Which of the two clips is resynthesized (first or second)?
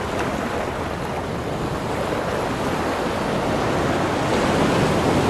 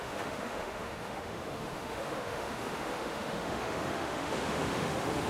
second